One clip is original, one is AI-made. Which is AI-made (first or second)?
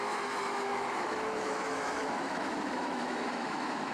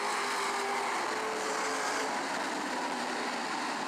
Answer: first